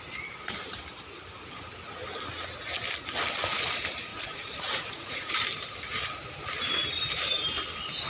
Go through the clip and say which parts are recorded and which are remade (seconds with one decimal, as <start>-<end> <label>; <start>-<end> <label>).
0.0-4.1 recorded; 4.1-5.4 remade; 5.4-8.1 recorded